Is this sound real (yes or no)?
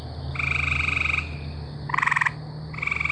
yes